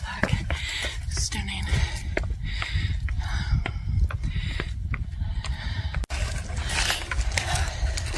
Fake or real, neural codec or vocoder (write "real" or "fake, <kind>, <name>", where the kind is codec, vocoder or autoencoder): real